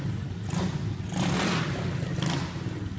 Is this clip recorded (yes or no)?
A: yes